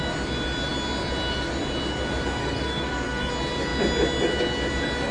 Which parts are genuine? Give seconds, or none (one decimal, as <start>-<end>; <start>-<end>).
0.0-2.4; 3.3-5.1